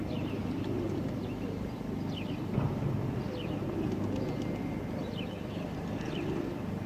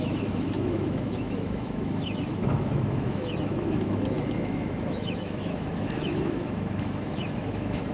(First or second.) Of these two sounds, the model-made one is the second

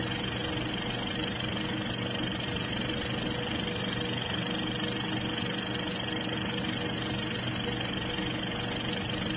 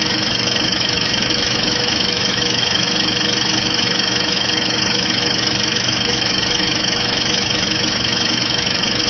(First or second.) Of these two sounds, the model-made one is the second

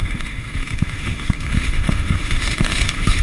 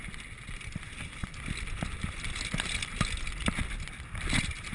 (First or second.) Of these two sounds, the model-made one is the first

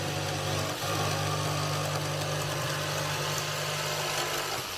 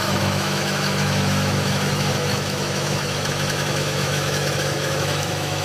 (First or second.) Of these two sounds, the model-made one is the second